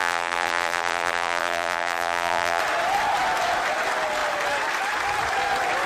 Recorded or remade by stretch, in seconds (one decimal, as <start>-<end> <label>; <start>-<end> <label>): 0.0-2.6 remade; 2.6-5.9 recorded